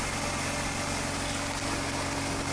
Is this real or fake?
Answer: real